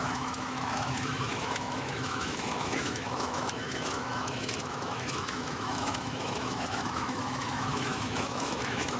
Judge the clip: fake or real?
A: fake